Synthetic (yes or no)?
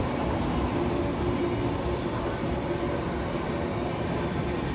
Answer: no